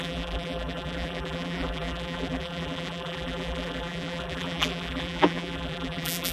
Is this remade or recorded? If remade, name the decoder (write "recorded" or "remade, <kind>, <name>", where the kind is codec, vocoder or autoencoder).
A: remade, vocoder, BigVGAN v2